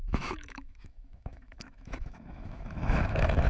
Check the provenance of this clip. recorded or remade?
remade